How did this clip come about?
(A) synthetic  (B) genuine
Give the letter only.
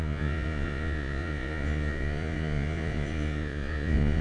A